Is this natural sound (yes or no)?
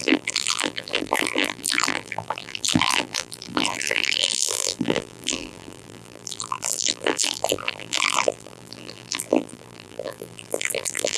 no